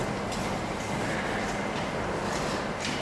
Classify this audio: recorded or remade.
recorded